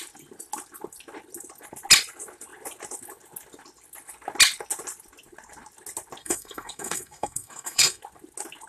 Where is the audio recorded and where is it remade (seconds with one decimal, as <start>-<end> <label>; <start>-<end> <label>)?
0.0-6.2 recorded; 6.2-8.0 remade; 8.0-8.7 recorded